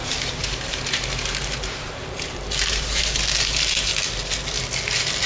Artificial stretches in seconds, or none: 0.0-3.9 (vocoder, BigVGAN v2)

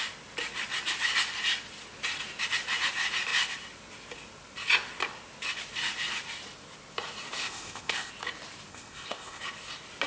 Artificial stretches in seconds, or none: 7.4-8.1 (codec, ZipCodec); 8.7-9.4

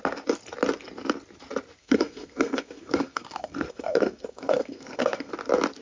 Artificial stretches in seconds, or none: 1.8-5.3 (codec, SNAC)

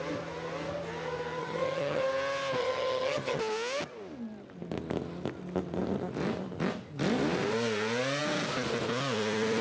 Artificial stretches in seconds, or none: 1.4-2.0 (vocoder, HiFi-GAN); 2.6-3.4

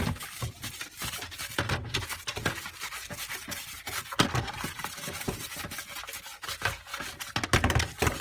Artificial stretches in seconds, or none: none

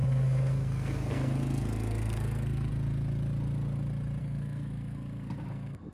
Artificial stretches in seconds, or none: 0.0-2.7 (codec, SNAC); 4.2-5.9

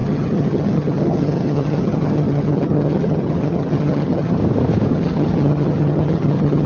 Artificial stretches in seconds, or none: 0.0-4.4 (vocoder, HiFi-GAN); 4.9-6.7